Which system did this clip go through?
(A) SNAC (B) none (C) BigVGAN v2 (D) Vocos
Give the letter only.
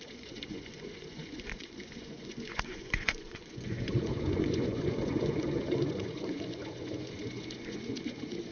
D